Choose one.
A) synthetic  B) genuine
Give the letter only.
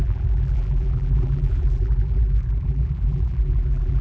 A